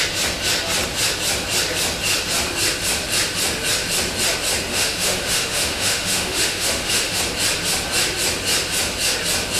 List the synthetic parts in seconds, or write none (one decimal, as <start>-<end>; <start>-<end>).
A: 4.7-7.2